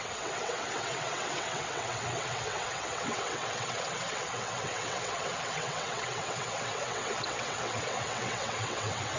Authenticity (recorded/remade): remade